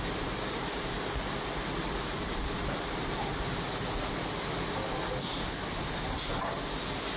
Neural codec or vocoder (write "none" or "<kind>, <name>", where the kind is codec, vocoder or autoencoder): none